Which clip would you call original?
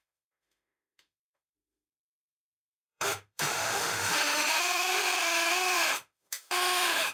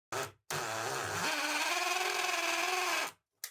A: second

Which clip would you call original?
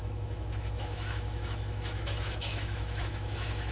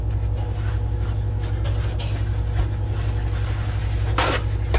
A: second